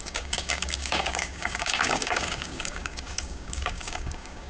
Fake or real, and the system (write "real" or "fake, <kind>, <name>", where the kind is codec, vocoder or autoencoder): fake, codec, DAC